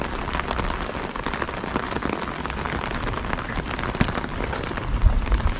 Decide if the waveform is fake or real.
real